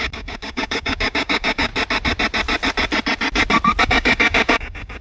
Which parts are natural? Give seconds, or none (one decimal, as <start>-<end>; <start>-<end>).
1.7-3.8